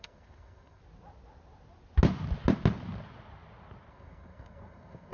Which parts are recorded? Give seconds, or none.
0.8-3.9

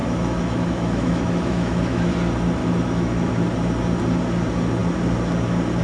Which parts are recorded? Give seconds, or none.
2.1-2.6; 3.3-5.8

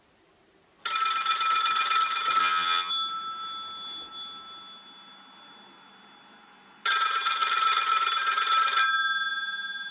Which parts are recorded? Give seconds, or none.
0.0-2.4; 2.9-9.9